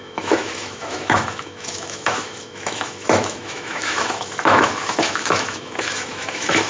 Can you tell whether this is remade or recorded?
remade